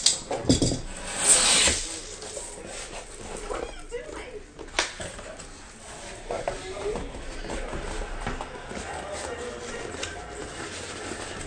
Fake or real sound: real